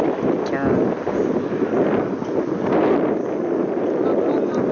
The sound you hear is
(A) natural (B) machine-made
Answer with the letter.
A